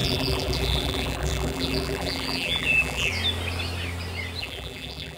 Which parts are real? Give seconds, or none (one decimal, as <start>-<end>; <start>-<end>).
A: 3.1-4.4